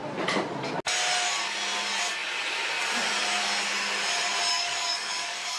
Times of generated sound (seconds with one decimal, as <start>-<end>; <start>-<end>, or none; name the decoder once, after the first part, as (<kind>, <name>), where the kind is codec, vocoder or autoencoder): 4.5-5.6 (codec, DAC)